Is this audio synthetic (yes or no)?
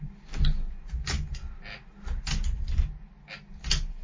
no